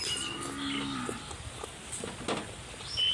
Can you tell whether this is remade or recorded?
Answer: recorded